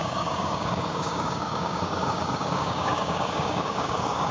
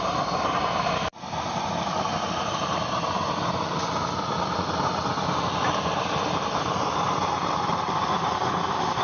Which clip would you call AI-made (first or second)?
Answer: first